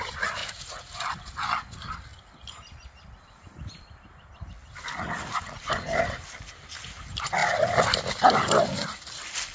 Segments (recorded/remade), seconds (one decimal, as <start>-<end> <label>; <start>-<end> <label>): 0.0-0.4 recorded; 0.4-0.9 remade; 0.9-9.5 recorded

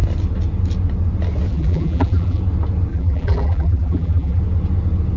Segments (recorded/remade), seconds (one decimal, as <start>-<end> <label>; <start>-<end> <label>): 0.0-1.5 recorded; 1.5-2.4 remade; 2.4-2.9 recorded; 2.9-4.4 remade; 4.4-5.2 recorded

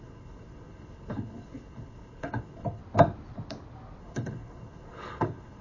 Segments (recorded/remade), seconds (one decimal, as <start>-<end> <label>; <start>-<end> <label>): 0.0-2.8 remade; 2.8-4.0 recorded; 4.0-5.6 remade